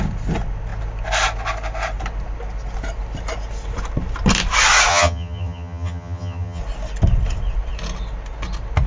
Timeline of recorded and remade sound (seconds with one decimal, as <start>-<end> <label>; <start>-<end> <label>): 0.0-4.9 recorded; 4.9-6.6 remade; 6.6-8.9 recorded